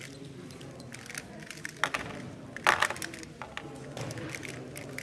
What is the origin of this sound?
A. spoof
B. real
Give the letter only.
B